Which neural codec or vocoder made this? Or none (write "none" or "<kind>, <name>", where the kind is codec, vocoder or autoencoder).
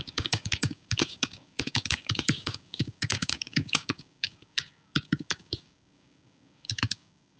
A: codec, DAC